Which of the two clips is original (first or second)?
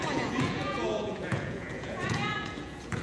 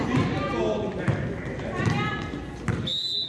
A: second